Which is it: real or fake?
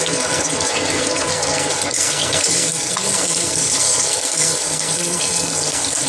fake